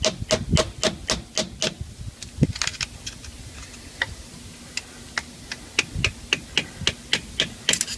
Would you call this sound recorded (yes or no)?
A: yes